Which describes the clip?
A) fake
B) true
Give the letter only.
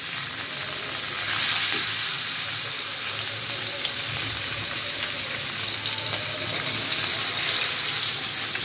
B